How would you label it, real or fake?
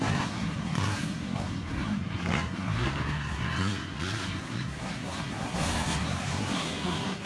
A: fake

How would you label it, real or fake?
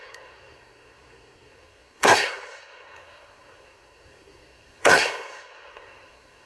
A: fake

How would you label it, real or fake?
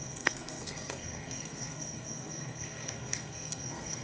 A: fake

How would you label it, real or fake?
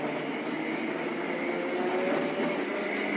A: real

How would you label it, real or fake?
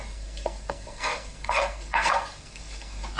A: fake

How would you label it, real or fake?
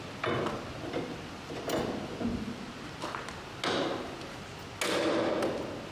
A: real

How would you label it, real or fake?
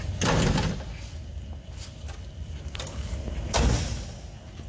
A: real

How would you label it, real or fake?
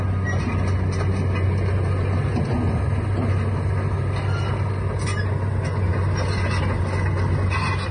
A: real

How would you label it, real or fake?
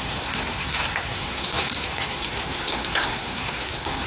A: fake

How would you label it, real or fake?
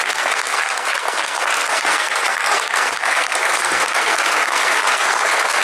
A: fake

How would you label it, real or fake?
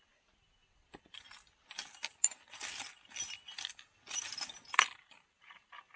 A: real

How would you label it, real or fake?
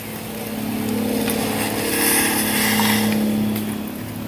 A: real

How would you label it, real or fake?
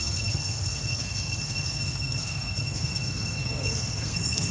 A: fake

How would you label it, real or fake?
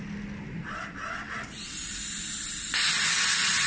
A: real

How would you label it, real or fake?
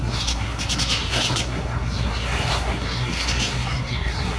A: fake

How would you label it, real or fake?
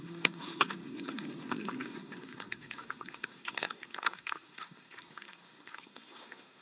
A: fake